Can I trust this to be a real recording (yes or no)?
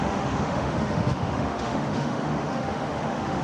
no